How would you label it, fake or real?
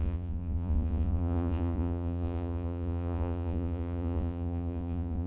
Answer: fake